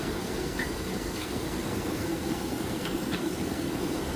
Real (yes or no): no